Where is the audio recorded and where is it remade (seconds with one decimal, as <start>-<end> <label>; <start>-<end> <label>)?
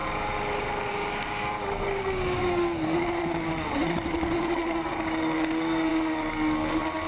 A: 0.0-0.9 recorded; 0.9-5.9 remade; 5.9-7.1 recorded